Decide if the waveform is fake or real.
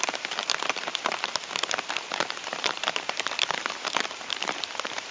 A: fake